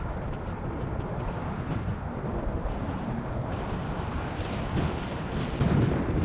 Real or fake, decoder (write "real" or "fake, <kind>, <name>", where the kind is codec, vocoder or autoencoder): real